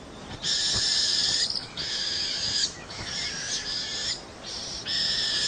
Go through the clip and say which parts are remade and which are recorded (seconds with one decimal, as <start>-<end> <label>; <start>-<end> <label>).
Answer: 0.0-1.6 recorded; 1.6-3.1 remade; 3.1-5.5 recorded